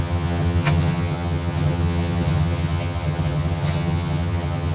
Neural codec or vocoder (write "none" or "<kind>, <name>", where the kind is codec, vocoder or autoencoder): vocoder, HiFi-GAN